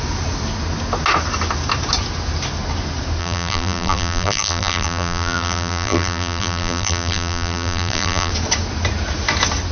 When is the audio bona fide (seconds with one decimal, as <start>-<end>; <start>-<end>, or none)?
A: 0.0-3.2; 8.3-9.7